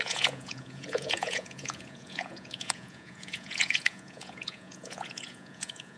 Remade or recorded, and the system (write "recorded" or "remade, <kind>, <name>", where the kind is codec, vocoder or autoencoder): remade, vocoder, Vocos